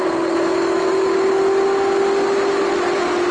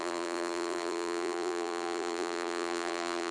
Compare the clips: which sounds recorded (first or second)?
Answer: first